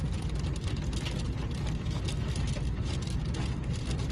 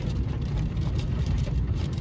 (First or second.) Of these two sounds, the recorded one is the first